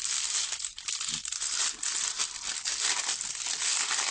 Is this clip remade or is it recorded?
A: recorded